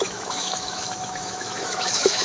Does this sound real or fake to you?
fake